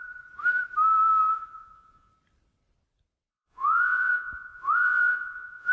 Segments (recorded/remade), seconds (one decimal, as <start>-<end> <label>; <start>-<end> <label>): 0.0-1.3 recorded; 1.3-2.1 remade; 2.1-3.3 recorded; 3.3-5.7 remade